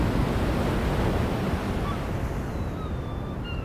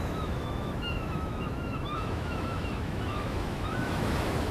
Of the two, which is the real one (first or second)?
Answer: first